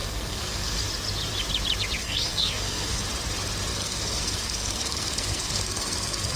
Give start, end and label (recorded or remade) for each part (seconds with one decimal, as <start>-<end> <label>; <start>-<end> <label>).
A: 0.0-0.8 remade; 0.8-2.0 recorded; 2.0-3.0 remade; 3.0-3.7 recorded; 3.7-6.4 remade